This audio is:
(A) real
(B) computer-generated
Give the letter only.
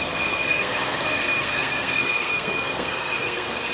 B